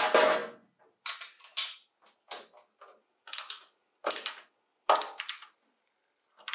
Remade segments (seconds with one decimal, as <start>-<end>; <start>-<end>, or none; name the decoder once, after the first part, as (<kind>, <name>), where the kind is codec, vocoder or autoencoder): none